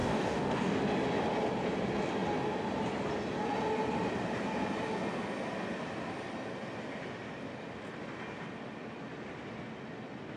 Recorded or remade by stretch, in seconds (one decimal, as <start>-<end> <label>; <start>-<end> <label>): 0.0-0.8 remade; 0.8-10.4 recorded